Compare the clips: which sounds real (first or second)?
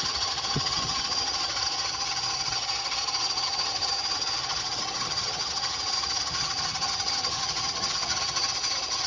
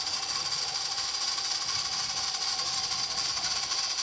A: second